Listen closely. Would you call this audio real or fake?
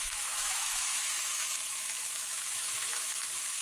fake